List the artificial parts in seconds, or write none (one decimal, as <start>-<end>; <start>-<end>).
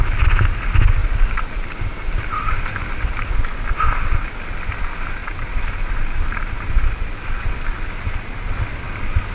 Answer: 1.0-2.6; 5.2-7.4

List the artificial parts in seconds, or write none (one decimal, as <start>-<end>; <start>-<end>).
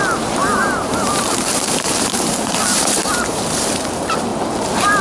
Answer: 0.4-3.4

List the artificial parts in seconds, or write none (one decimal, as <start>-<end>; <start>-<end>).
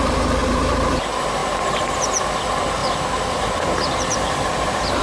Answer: 0.4-1.0; 1.4-2.0; 2.8-5.0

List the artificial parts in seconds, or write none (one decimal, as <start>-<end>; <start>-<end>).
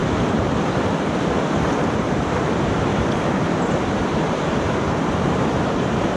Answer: 1.6-2.9; 3.7-6.2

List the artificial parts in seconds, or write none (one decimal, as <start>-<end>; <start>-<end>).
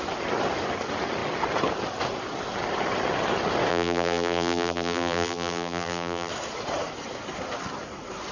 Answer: 3.7-6.3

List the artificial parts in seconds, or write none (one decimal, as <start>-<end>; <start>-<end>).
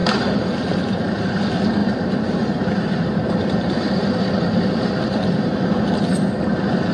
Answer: 0.0-1.4; 1.8-5.9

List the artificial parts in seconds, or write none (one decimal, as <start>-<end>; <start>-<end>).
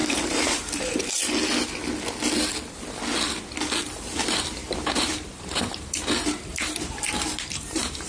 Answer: 0.0-1.2; 4.6-8.1